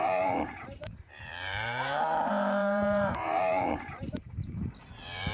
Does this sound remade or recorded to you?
remade